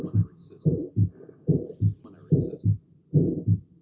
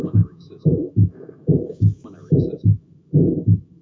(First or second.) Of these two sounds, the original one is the first